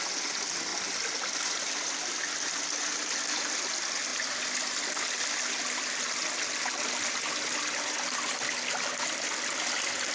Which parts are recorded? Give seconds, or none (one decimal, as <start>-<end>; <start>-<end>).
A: 0.0-10.1